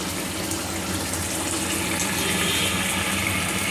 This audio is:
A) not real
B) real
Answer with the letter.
B